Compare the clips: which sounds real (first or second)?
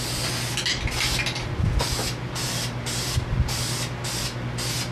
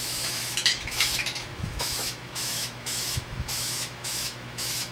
first